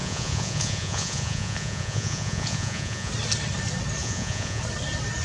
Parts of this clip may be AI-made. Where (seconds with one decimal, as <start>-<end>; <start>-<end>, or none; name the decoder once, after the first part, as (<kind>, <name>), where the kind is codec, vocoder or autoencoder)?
0.0-3.1 (vocoder, Vocos); 4.0-4.6